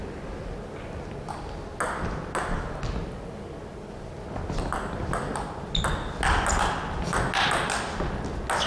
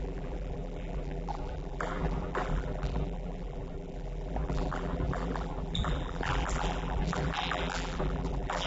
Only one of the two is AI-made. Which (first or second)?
second